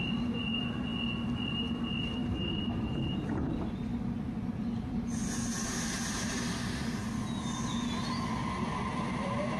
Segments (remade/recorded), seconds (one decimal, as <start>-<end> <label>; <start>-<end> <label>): 0.0-0.9 remade; 0.9-1.5 recorded; 1.5-3.9 remade; 3.9-4.5 recorded; 4.5-7.0 remade; 7.0-8.9 recorded; 8.9-9.6 remade